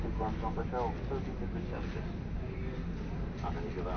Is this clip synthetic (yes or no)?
no